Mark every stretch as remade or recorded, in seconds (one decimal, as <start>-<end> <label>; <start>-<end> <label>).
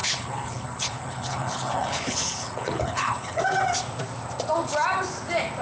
0.0-3.4 remade; 3.4-5.6 recorded